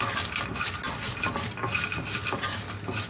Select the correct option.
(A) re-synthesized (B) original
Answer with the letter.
B